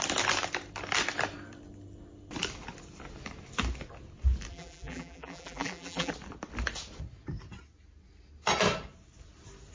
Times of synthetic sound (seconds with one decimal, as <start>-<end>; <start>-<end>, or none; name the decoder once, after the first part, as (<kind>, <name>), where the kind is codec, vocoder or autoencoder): 4.5-6.1 (vocoder, BigVGAN v2)